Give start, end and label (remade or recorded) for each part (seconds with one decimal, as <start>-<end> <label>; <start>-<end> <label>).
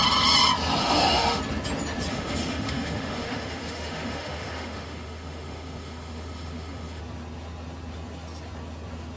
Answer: 0.0-0.8 recorded; 0.8-1.4 remade; 1.4-2.1 recorded; 2.1-7.0 remade; 7.0-9.2 recorded